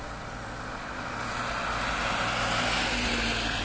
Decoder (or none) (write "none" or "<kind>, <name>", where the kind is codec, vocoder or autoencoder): none